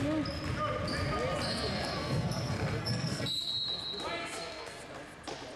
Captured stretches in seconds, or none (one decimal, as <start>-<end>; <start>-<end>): 0.0-1.5; 3.5-4.2; 4.8-5.6